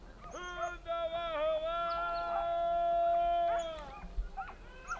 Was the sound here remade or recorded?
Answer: recorded